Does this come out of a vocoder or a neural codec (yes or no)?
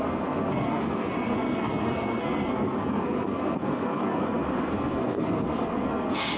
yes